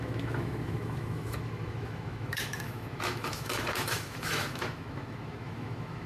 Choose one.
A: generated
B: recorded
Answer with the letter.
A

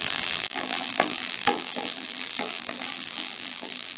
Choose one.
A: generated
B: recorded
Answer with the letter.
A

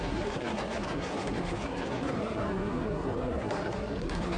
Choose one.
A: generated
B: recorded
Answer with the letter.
A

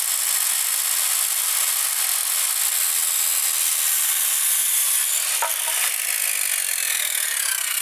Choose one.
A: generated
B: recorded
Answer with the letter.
B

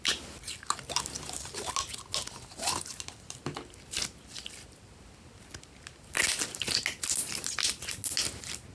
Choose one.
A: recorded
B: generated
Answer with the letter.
A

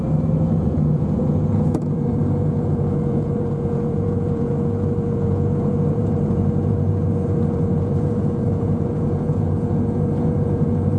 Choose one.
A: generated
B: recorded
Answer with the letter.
A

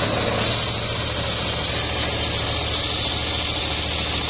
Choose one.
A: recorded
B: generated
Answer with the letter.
A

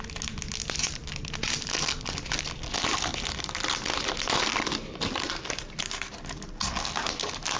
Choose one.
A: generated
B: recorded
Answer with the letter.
B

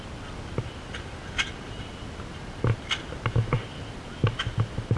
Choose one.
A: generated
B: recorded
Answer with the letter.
B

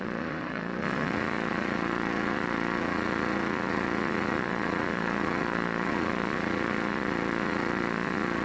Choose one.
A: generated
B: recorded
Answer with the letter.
A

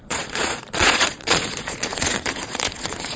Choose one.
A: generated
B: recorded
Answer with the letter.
A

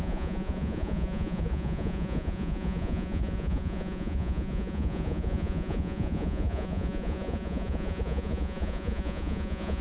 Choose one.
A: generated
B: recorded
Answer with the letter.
A